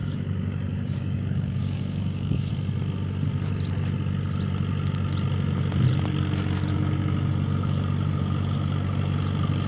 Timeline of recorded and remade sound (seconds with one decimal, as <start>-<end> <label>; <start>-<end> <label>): 0.0-2.5 remade; 2.5-9.7 recorded